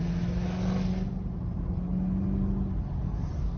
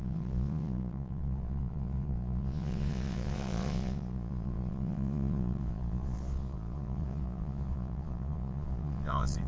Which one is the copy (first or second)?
second